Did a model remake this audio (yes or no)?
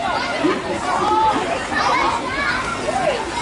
no